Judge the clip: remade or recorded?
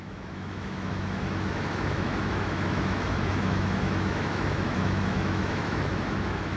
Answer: remade